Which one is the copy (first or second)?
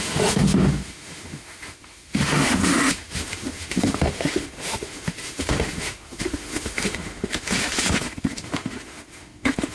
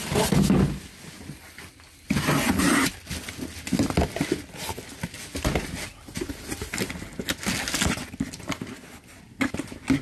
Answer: first